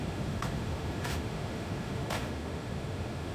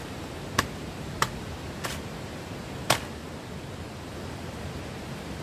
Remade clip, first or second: first